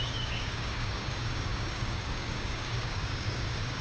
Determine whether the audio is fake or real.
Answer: fake